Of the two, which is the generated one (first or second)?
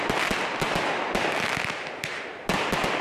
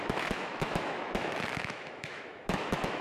second